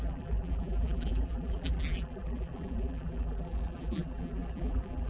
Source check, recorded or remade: remade